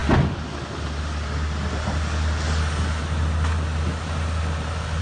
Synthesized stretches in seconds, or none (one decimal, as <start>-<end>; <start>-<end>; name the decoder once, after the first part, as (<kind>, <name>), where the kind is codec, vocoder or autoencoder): none

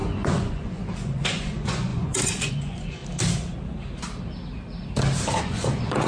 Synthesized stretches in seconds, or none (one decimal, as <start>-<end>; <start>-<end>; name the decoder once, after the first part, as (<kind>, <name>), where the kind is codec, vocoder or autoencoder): 0.0-3.0 (vocoder, Vocos); 5.4-6.1

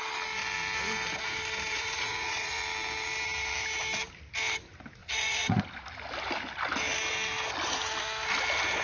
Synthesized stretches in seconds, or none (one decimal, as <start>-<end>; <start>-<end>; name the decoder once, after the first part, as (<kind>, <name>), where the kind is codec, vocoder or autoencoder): 1.7-2.6 (vocoder, Vocos); 5.0-5.6

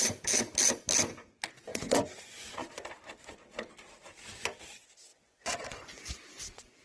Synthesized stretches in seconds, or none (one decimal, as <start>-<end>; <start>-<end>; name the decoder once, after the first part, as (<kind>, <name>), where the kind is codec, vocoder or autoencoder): 1.7-2.7 (vocoder, Vocos); 5.1-6.0

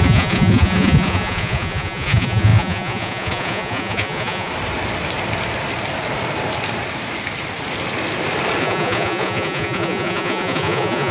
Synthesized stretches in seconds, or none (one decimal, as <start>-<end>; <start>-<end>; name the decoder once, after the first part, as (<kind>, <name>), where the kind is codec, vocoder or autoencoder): 0.0-4.5 (vocoder, Vocos); 8.6-11.1

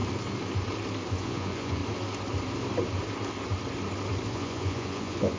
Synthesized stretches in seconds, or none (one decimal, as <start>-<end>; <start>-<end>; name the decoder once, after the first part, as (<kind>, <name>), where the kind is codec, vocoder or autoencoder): 1.1-1.8 (vocoder, Vocos); 4.3-5.4

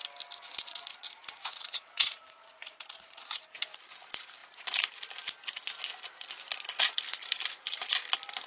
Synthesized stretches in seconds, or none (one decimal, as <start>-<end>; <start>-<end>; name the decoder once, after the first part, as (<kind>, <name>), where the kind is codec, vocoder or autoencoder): 0.4-3.4 (vocoder, Vocos)

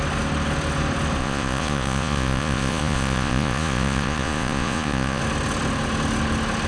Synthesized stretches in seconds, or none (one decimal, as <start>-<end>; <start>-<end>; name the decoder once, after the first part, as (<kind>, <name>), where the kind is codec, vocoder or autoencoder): 1.2-5.2 (vocoder, Vocos)